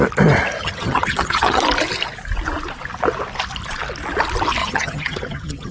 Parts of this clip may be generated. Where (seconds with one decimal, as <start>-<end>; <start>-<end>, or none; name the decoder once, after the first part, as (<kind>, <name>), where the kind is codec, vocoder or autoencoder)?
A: 0.6-1.6 (vocoder, HiFi-GAN); 4.6-5.7